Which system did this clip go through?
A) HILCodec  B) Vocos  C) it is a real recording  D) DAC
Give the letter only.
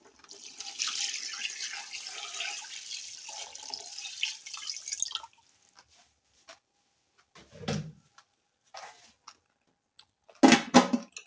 C